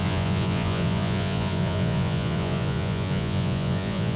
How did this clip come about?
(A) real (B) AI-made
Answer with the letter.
B